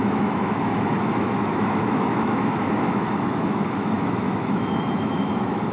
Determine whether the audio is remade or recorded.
remade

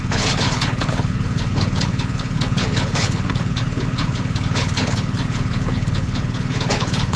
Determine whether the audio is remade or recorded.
remade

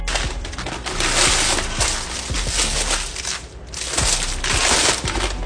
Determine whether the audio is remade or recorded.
recorded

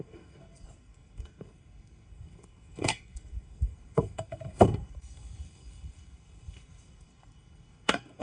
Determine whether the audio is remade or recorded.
remade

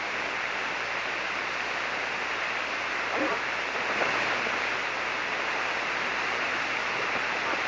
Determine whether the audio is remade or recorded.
recorded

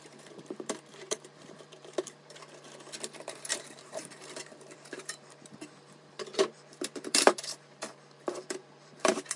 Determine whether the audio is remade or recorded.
remade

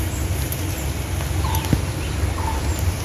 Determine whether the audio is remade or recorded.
recorded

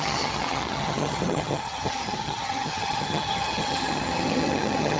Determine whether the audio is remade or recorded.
remade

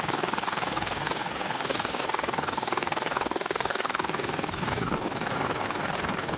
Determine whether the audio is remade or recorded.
remade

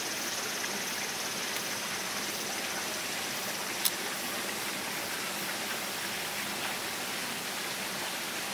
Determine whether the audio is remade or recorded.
recorded